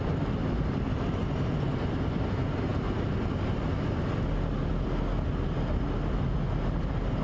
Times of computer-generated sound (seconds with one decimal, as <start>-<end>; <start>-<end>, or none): none

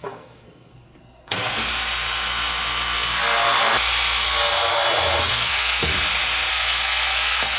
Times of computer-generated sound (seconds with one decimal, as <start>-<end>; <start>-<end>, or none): 0.0-1.7; 5.3-5.9; 6.5-7.6

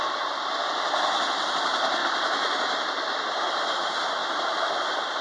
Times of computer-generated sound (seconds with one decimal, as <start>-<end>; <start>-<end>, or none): 0.0-0.6; 1.3-2.0; 3.7-4.2; 4.7-5.2

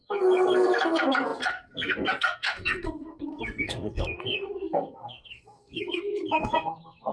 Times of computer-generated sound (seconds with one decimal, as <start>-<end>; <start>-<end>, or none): 0.0-7.1

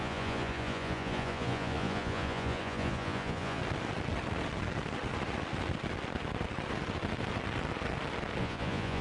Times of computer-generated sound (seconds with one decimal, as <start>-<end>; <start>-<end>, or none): 0.0-3.6; 8.4-9.0

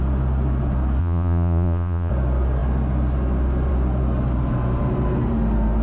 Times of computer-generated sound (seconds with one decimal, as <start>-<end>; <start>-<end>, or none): 1.0-2.1